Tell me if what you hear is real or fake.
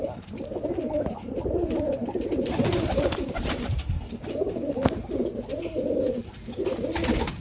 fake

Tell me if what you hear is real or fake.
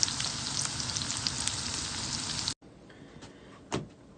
real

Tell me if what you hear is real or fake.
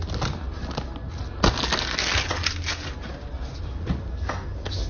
real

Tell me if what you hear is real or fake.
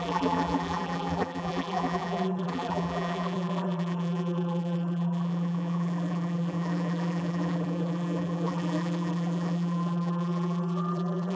fake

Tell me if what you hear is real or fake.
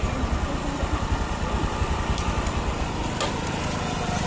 real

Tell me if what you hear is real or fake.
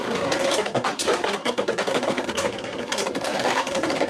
fake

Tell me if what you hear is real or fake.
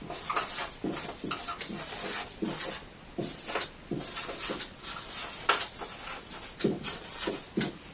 real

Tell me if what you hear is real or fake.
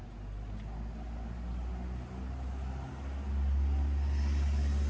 real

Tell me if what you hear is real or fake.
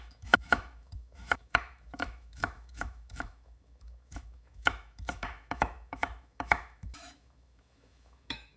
fake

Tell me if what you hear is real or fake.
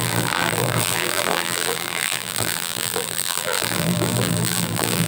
fake